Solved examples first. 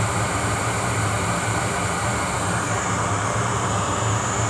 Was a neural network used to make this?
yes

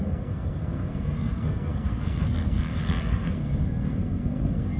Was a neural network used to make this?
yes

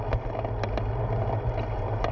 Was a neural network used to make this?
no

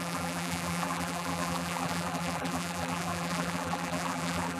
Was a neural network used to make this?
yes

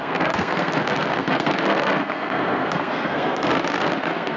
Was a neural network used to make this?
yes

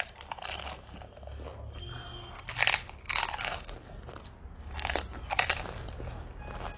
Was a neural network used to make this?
no